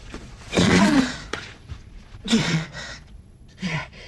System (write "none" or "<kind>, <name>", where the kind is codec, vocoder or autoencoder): vocoder, Vocos